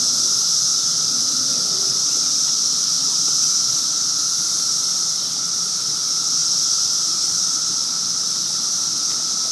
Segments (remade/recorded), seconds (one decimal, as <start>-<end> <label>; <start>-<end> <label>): 0.0-9.5 recorded